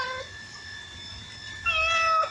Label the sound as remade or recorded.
recorded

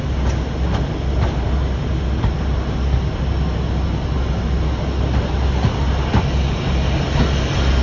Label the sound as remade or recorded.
recorded